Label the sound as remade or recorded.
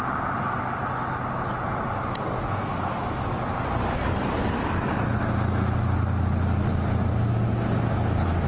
recorded